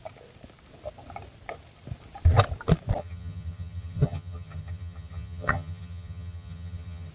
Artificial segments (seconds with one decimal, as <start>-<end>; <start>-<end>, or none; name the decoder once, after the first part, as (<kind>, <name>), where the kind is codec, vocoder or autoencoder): 3.0-7.1 (vocoder, HiFi-GAN)